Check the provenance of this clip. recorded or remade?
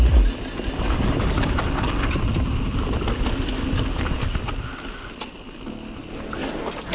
recorded